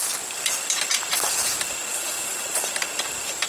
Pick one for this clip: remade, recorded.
recorded